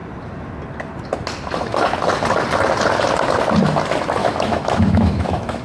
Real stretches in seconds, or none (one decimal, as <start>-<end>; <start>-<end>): 0.0-4.2